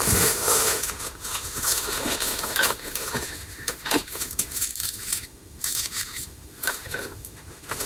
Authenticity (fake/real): fake